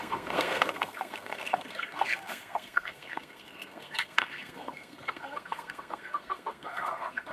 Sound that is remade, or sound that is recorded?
remade